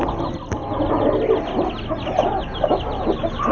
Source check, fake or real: real